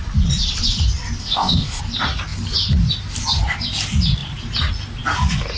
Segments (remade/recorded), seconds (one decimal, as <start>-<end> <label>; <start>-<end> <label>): 0.0-1.2 recorded; 1.2-1.8 remade; 1.8-5.6 recorded